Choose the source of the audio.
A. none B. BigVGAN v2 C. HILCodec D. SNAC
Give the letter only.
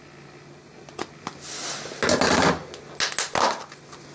A